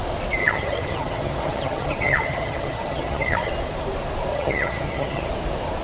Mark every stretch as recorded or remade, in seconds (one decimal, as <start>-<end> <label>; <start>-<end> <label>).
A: 0.0-0.4 recorded; 0.4-3.5 remade; 3.5-4.3 recorded; 4.3-5.3 remade; 5.3-5.8 recorded